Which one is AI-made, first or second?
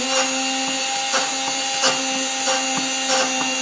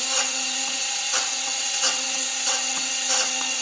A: second